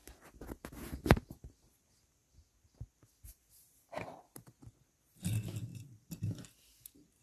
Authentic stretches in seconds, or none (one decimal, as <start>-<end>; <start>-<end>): 0.0-5.7; 6.2-7.2